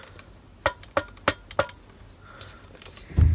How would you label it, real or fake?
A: real